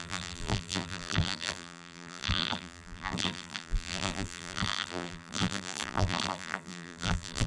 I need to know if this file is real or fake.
fake